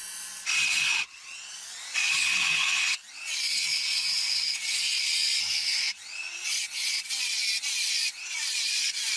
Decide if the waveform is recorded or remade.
remade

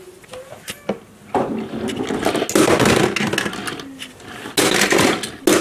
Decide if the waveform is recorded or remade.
recorded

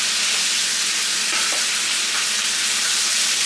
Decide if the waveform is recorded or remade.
recorded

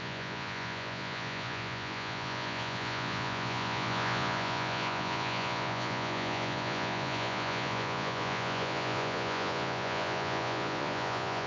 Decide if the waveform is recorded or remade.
remade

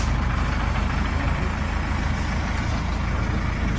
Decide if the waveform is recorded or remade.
recorded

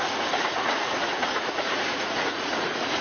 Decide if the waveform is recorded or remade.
remade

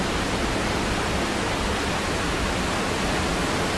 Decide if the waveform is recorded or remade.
recorded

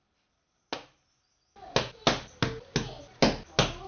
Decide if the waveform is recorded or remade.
recorded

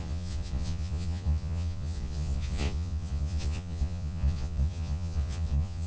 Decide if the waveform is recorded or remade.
remade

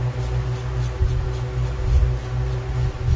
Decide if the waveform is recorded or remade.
recorded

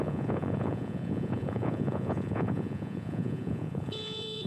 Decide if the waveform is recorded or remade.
remade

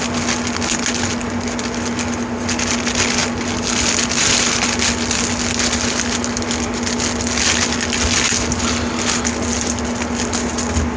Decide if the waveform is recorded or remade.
recorded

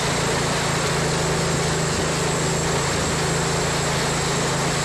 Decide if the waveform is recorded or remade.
recorded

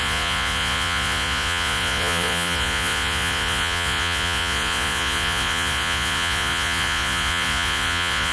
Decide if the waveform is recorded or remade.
remade